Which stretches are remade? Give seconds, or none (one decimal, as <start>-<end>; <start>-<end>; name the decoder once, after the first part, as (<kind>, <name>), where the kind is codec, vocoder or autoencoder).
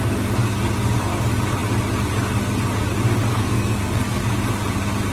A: 3.4-4.2 (codec, SNAC)